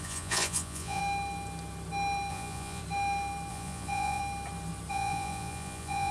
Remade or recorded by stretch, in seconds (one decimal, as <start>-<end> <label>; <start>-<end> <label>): 0.0-1.0 remade; 1.0-2.3 recorded; 2.3-2.8 remade; 2.8-3.5 recorded; 3.5-4.2 remade; 4.2-4.9 recorded; 4.9-6.1 remade